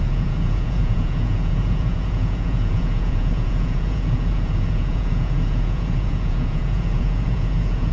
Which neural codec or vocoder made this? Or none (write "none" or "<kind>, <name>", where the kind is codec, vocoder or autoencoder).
vocoder, Vocos